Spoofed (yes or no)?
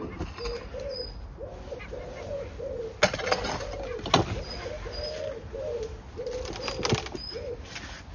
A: no